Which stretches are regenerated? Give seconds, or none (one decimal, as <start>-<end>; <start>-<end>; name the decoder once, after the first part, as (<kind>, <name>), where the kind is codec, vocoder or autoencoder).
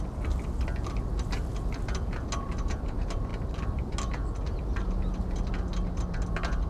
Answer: none